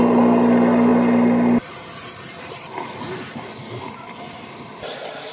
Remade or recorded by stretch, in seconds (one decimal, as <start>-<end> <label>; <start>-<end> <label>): 0.0-5.3 recorded

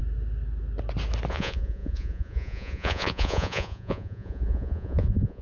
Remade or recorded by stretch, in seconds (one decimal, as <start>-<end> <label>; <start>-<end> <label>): 0.0-1.3 recorded; 1.3-5.4 remade

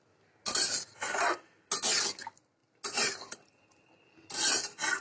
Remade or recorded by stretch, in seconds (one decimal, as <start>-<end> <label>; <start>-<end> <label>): 0.0-5.0 recorded

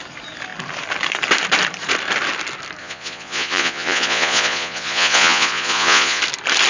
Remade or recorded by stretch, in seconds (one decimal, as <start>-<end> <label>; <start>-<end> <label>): 0.0-2.8 recorded; 2.8-6.2 remade; 6.2-6.7 recorded

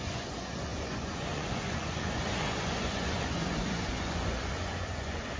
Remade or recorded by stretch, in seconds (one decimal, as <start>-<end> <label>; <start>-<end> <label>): 0.0-5.4 remade

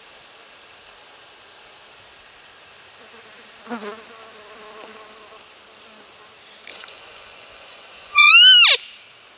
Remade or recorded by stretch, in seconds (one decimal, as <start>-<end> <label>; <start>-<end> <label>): 0.0-6.7 recorded; 6.7-8.3 remade; 8.3-9.4 recorded

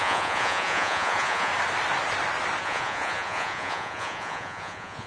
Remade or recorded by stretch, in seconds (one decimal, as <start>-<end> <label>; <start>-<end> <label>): 0.0-1.5 remade; 1.5-2.6 recorded; 2.6-5.1 remade